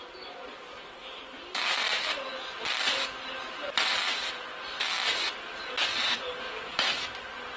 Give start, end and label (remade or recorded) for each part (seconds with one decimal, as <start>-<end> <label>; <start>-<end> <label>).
0.0-7.6 recorded

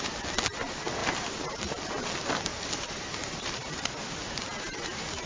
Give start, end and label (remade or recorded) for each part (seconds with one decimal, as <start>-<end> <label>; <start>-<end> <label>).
0.0-1.0 recorded; 1.0-1.7 remade; 1.7-2.5 recorded; 2.5-3.8 remade; 3.8-5.3 recorded

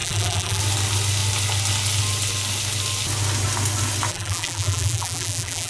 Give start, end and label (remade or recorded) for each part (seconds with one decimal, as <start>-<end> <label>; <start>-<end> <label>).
0.0-0.6 remade; 0.6-4.1 recorded; 4.1-5.7 remade

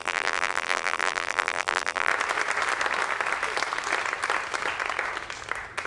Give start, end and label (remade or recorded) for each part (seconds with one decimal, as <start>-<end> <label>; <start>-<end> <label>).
0.0-2.1 remade; 2.1-5.9 recorded

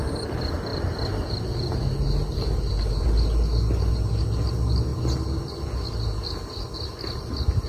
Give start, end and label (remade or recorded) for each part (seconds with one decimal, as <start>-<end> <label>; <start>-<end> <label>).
0.0-0.7 recorded; 0.7-3.1 remade; 3.1-7.7 recorded

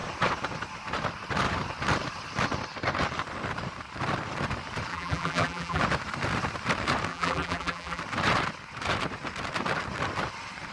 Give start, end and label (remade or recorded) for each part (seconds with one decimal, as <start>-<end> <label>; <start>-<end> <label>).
0.0-4.9 recorded; 4.9-5.8 remade; 5.8-7.1 recorded; 7.1-8.0 remade; 8.0-10.7 recorded

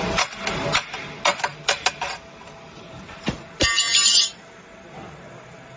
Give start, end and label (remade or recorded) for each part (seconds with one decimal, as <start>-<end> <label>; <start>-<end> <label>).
0.0-1.5 recorded; 1.5-3.7 remade; 3.7-5.8 recorded